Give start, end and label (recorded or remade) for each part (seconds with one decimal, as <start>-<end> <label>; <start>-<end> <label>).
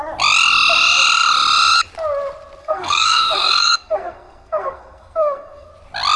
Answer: 0.0-2.6 recorded; 2.6-5.7 remade; 5.7-6.2 recorded